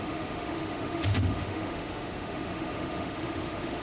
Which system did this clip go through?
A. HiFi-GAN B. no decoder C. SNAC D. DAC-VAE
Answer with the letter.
D